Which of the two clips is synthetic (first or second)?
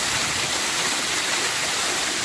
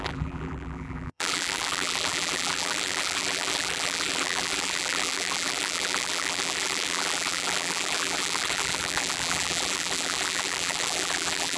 second